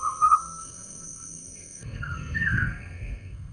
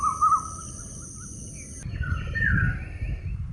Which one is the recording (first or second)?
second